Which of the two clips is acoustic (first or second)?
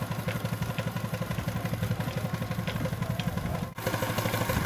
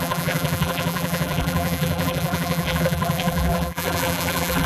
first